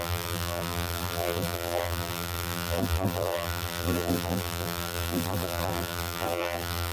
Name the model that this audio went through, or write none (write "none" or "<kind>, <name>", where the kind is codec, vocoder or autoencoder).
vocoder, BigVGAN v2